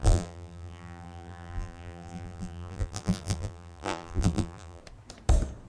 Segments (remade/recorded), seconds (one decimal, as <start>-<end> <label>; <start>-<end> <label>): 0.0-4.8 remade; 4.8-5.7 recorded